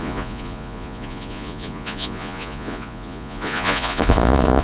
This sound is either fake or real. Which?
fake